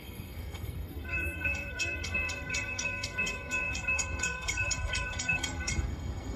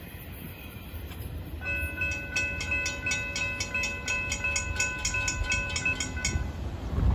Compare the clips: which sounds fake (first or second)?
first